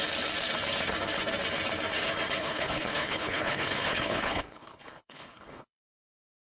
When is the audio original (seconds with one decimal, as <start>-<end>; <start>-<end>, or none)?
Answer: 0.0-2.4; 5.8-6.4